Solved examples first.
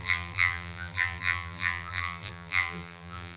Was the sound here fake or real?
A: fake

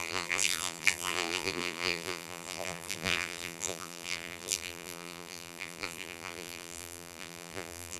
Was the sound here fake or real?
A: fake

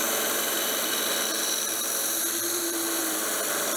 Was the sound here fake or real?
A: fake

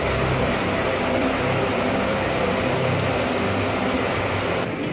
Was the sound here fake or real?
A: fake